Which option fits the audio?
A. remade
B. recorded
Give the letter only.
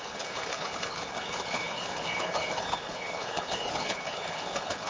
A